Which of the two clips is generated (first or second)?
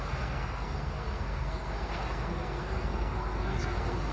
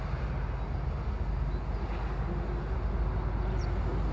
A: first